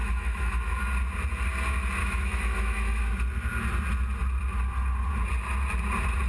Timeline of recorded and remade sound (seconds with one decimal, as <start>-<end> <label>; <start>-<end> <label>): 0.0-0.6 remade; 0.6-2.0 recorded; 2.0-3.0 remade; 3.0-6.3 recorded